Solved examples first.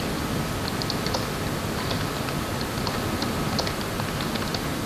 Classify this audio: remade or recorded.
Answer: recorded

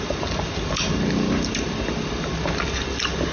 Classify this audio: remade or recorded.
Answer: recorded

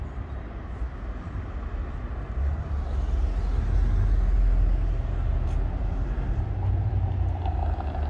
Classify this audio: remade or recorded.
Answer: recorded